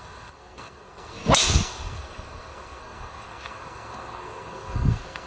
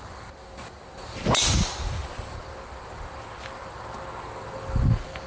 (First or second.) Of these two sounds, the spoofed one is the first